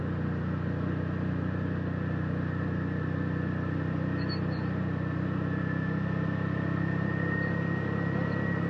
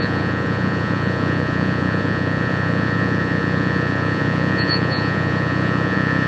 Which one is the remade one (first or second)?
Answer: second